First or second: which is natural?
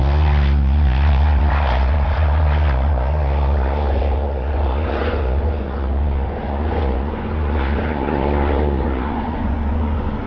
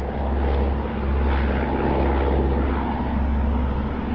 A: second